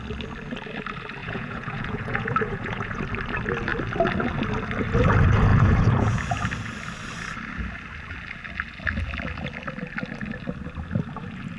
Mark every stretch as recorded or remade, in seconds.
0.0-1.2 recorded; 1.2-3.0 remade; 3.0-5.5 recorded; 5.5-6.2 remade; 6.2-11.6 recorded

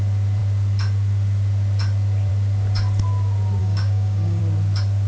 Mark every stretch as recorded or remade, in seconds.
0.0-3.6 recorded; 3.6-4.4 remade; 4.4-5.1 recorded

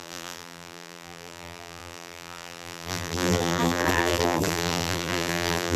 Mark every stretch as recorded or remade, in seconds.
0.0-5.8 remade